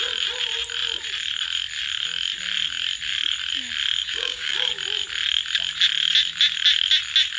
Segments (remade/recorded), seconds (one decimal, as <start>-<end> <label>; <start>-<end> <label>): 0.0-4.0 recorded; 4.0-4.7 remade; 4.7-7.4 recorded